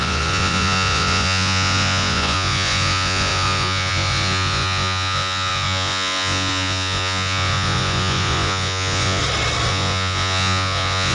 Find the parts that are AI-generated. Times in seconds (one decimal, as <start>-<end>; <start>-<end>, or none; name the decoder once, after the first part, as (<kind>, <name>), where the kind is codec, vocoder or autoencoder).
0.0-9.2 (vocoder, Vocos); 9.7-11.1